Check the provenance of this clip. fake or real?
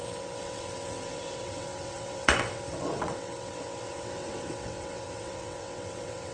fake